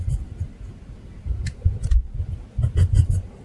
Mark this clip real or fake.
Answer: real